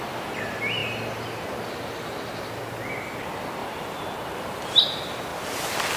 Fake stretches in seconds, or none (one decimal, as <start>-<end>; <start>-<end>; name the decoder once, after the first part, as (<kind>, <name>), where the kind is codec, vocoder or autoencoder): 3.6-4.7 (vocoder, BigVGAN v2)